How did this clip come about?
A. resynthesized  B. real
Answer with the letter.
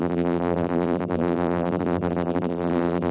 A